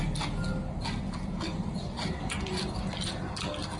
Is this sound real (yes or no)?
yes